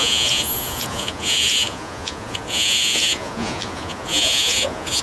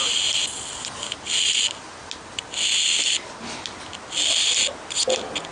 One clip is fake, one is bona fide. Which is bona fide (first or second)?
second